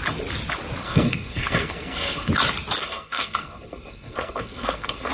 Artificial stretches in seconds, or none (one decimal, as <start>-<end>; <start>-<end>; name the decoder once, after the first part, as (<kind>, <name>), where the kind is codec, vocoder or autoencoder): 0.8-2.3 (codec, SNAC); 2.8-5.1